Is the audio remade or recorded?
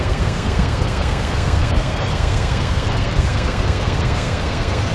remade